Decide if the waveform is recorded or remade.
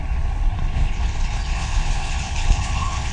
remade